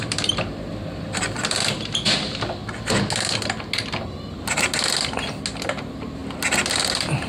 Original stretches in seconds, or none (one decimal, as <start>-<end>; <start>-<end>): 2.6-5.8; 6.2-6.8